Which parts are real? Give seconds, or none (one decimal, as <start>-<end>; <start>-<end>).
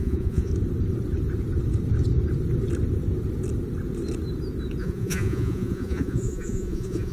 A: 0.5-4.8